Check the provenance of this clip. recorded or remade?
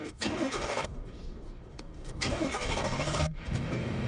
remade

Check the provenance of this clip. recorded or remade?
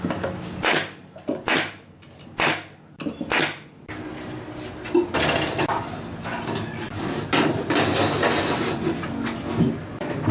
recorded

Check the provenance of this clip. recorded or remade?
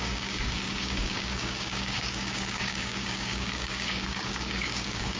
remade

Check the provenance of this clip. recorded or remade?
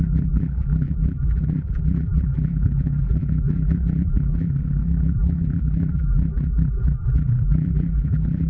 remade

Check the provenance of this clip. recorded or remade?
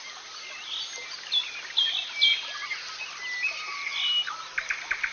recorded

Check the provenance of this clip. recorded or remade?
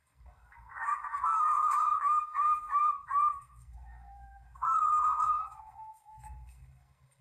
remade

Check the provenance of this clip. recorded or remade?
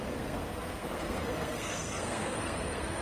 remade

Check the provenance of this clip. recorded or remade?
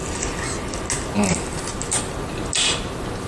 recorded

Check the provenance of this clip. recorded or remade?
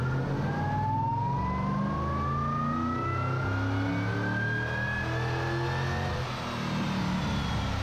recorded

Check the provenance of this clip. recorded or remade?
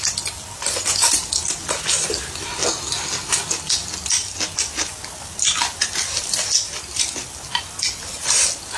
recorded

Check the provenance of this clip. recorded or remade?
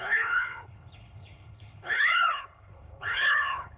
remade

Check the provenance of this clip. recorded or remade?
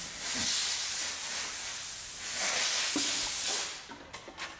recorded